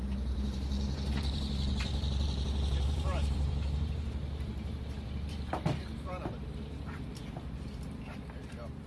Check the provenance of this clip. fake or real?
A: fake